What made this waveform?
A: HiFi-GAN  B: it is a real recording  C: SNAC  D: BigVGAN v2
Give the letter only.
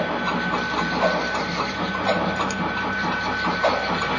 B